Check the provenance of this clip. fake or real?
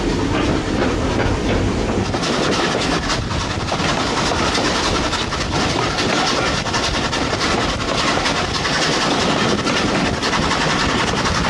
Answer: real